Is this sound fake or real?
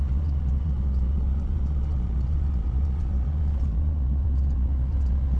fake